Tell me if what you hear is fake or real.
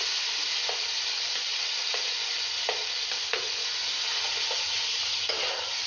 real